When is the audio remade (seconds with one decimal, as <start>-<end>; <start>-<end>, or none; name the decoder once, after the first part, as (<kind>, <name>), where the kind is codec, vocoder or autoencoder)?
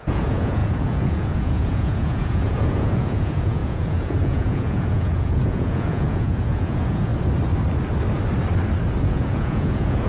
0.0-7.1 (vocoder, Vocos); 9.0-10.1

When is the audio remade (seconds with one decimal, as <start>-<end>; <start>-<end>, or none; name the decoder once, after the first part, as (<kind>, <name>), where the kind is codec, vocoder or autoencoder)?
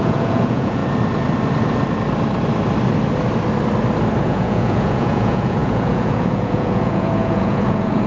0.0-0.8 (vocoder, Vocos); 4.2-8.1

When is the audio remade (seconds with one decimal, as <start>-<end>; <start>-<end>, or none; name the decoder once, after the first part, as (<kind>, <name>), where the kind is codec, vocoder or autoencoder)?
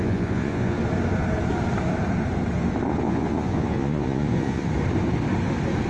0.0-0.8 (vocoder, Vocos); 2.9-4.7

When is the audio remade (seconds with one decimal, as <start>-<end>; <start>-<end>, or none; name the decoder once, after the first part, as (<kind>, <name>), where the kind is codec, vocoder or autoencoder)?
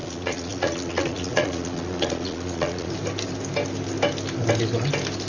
0.0-2.9 (vocoder, Vocos)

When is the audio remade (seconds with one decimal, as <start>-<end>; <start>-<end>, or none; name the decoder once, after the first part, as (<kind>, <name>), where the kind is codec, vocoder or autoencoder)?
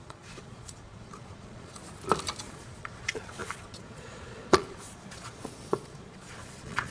0.0-1.8 (vocoder, Vocos); 2.5-6.9